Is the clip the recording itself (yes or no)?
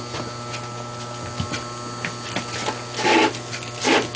yes